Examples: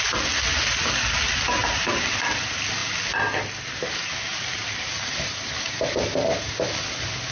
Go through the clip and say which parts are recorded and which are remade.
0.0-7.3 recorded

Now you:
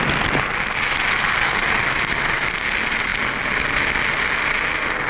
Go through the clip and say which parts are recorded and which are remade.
0.0-5.1 recorded

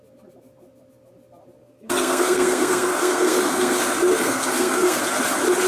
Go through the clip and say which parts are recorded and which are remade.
0.0-1.6 recorded; 1.6-5.0 remade; 5.0-5.7 recorded

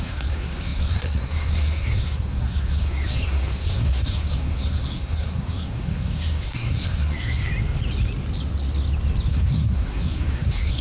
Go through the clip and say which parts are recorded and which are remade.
0.0-7.5 remade; 7.5-9.3 recorded; 9.3-10.8 remade

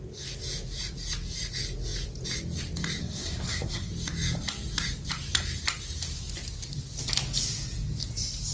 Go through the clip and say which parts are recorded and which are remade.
0.0-3.0 recorded; 3.0-3.9 remade; 3.9-8.5 recorded

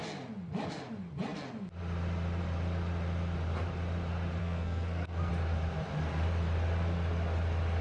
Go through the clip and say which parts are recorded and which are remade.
0.0-4.4 recorded; 4.4-5.3 remade; 5.3-7.8 recorded

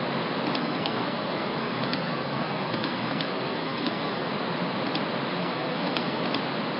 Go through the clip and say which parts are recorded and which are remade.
0.0-0.6 recorded; 0.6-4.3 remade; 4.3-5.4 recorded; 5.4-6.2 remade; 6.2-6.8 recorded